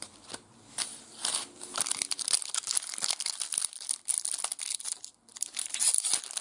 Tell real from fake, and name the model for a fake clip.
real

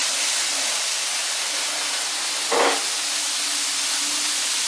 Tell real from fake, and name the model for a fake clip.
real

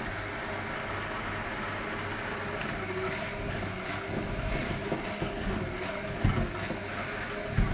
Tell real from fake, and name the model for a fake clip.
real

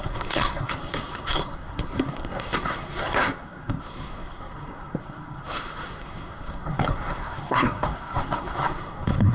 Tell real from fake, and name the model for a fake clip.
fake, codec, SNAC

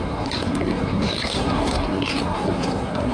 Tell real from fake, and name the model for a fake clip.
fake, codec, SNAC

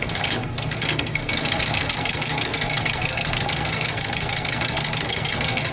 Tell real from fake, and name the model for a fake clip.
fake, codec, SNAC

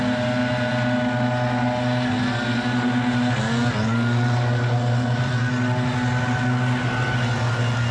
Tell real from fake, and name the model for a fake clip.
real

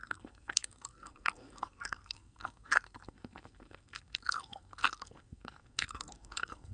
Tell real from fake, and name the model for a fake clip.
fake, codec, SNAC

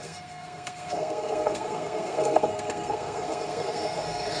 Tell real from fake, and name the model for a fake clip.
fake, codec, SNAC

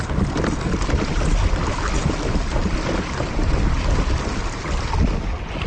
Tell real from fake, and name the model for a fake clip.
real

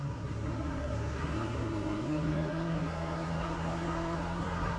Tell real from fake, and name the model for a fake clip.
fake, codec, SNAC